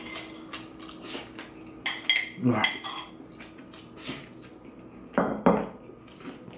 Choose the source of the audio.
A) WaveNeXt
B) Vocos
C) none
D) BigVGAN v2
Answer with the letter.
C